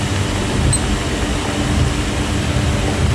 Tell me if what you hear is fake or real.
real